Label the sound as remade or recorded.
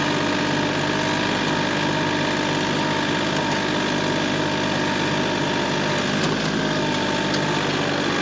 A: recorded